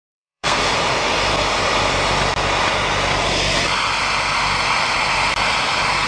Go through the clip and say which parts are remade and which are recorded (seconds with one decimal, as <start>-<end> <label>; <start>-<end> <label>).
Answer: 0.0-0.6 remade; 0.6-6.1 recorded